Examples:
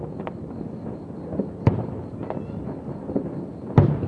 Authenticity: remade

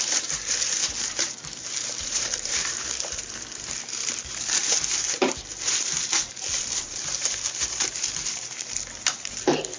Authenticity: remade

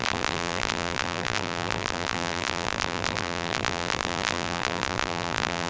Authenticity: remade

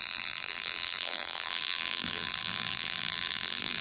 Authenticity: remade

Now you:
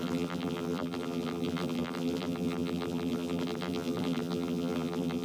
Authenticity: remade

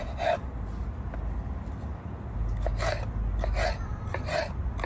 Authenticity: recorded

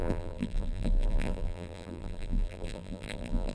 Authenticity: remade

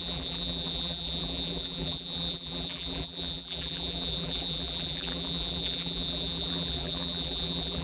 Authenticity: remade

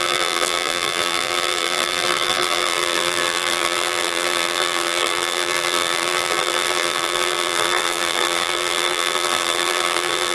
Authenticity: remade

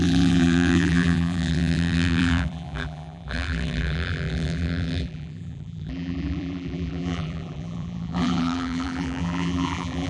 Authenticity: remade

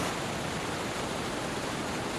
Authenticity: recorded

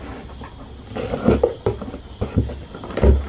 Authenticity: recorded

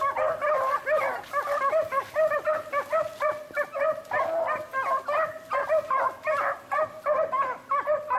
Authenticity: recorded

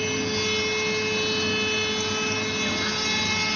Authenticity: recorded